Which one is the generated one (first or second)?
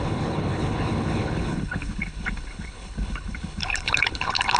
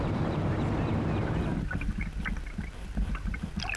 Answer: first